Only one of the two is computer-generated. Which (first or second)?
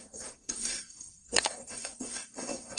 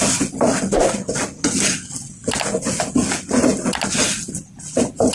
first